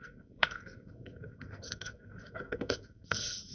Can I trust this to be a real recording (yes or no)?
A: no